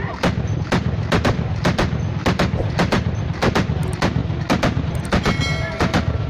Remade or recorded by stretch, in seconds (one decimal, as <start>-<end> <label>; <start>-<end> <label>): 0.0-6.3 recorded